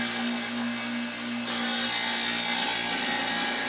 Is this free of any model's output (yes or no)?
yes